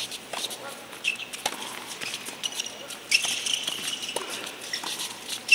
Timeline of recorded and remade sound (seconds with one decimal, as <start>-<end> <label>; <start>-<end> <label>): 0.0-5.5 recorded